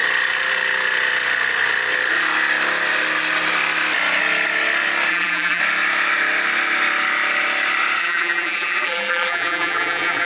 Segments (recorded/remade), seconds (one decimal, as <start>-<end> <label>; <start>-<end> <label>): 0.0-5.1 recorded; 5.1-5.6 remade; 5.6-8.0 recorded; 8.0-10.3 remade